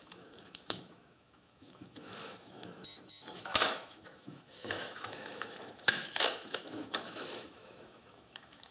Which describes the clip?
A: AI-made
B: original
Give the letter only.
A